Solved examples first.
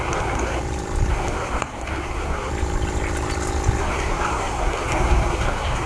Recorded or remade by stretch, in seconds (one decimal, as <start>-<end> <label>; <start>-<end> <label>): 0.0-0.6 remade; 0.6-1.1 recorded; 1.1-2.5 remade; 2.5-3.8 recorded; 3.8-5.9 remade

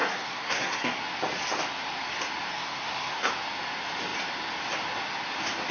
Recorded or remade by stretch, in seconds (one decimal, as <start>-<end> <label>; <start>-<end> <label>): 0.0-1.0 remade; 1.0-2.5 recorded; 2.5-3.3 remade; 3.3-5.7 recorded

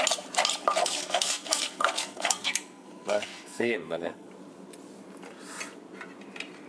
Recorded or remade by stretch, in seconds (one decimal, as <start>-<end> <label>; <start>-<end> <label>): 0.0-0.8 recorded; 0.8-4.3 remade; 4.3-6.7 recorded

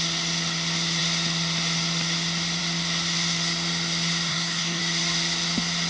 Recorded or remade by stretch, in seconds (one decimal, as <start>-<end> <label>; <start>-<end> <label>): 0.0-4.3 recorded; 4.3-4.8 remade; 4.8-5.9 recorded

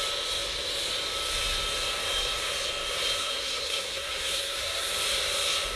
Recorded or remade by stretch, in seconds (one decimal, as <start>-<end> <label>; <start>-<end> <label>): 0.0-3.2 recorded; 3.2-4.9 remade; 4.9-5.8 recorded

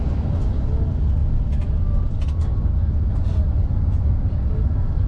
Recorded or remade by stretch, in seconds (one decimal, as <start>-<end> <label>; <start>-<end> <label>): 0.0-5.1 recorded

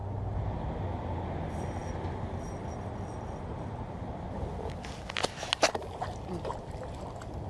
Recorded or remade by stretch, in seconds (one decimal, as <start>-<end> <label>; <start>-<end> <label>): 0.0-7.5 recorded

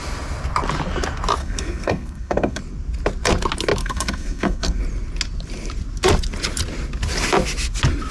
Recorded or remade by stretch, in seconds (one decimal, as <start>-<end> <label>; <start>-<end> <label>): 0.0-1.4 recorded; 1.4-2.6 remade; 2.6-3.8 recorded; 3.8-4.8 remade; 4.8-8.1 recorded